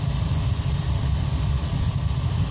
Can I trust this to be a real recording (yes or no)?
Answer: no